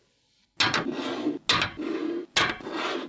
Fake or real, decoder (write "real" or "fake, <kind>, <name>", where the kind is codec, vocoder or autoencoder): real